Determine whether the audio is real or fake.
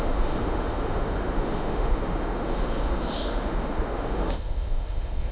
fake